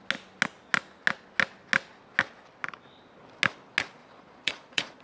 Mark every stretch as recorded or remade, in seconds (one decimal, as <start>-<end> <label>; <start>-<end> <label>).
0.0-4.0 recorded; 4.0-5.0 remade